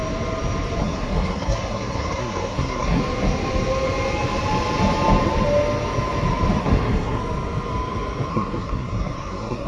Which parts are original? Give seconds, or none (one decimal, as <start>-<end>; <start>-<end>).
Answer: 0.0-0.8; 3.0-6.6; 7.2-8.3